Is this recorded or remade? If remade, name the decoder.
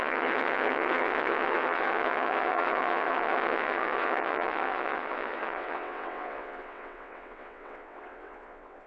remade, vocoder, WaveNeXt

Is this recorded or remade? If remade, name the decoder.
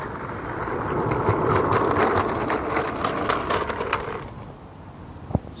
recorded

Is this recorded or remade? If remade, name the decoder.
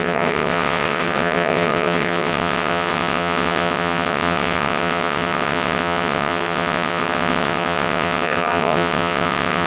remade, vocoder, WaveNeXt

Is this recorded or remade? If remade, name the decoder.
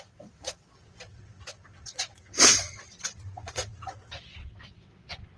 remade, vocoder, WaveNeXt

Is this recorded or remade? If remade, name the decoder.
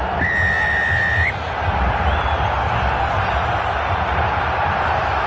recorded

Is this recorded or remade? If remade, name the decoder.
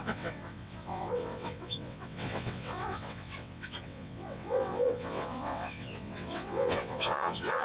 remade, vocoder, WaveNeXt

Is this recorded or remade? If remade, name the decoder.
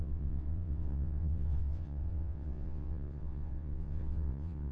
remade, vocoder, WaveNeXt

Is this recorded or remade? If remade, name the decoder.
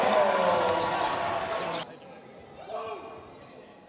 recorded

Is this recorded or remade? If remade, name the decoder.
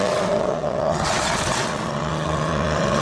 remade, vocoder, WaveNeXt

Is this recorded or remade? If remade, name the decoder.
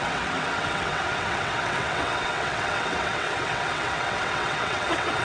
remade, vocoder, WaveNeXt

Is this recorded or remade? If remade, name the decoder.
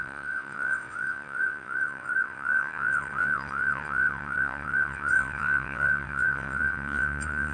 remade, vocoder, WaveNeXt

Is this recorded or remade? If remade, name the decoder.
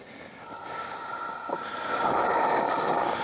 recorded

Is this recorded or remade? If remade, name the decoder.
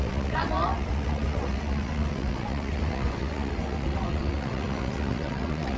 remade, vocoder, WaveNeXt